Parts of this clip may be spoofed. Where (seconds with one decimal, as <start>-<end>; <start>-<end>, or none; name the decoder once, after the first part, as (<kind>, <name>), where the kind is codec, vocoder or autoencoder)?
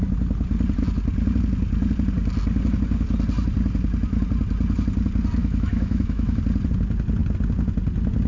5.4-6.4 (autoencoder, DAC-VAE)